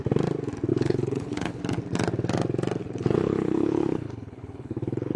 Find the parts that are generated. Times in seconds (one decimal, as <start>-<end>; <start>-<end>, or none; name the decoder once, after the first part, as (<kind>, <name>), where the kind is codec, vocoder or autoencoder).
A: 0.7-1.6 (codec, HILCodec); 2.8-5.2